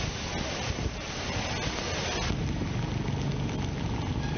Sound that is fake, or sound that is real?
real